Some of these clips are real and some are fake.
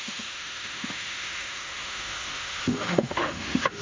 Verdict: fake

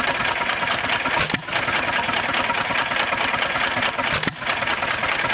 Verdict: real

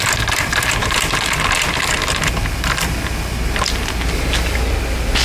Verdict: real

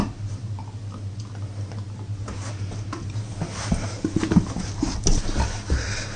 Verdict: real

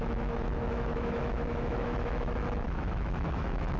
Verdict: fake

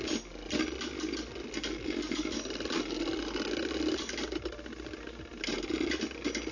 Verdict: real